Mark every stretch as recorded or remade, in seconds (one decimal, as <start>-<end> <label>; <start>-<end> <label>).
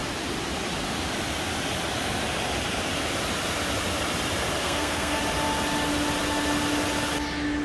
0.0-4.6 recorded; 4.6-5.2 remade; 5.2-7.6 recorded